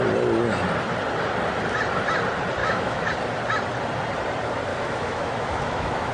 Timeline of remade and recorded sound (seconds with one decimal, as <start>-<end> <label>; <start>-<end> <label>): 0.0-2.6 recorded; 2.6-3.1 remade; 3.1-4.7 recorded; 4.7-6.1 remade